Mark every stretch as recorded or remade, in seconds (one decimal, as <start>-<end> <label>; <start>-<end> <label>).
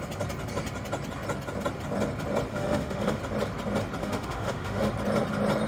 0.0-2.5 recorded; 2.5-3.2 remade; 3.2-4.0 recorded; 4.0-4.9 remade; 4.9-5.7 recorded